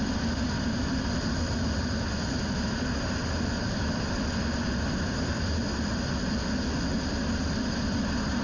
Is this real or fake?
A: real